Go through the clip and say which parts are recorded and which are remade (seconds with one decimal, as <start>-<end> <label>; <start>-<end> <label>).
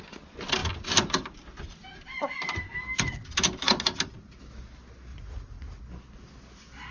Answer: 0.0-5.1 recorded; 5.1-5.8 remade; 5.8-6.9 recorded